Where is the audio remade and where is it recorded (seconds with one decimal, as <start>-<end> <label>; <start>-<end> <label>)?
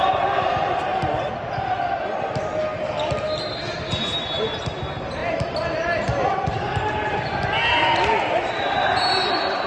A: 0.0-9.7 recorded